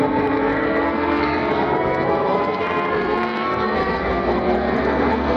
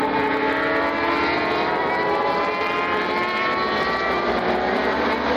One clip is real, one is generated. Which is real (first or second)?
second